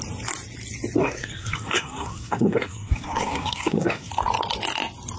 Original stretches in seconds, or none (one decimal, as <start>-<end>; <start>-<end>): 0.0-1.0; 4.1-5.2